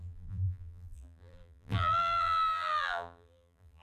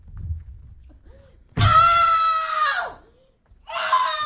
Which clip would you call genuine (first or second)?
second